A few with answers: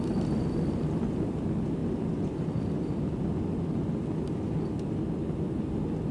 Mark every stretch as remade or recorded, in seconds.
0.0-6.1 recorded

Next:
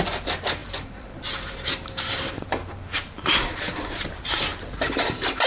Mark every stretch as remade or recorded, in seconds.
0.0-5.5 remade

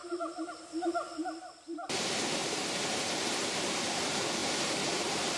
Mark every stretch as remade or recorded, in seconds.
0.0-2.4 recorded; 2.4-3.7 remade; 3.7-4.4 recorded; 4.4-5.4 remade

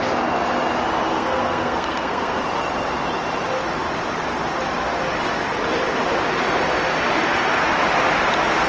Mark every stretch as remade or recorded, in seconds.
0.0-1.1 recorded; 1.1-2.4 remade; 2.4-8.7 recorded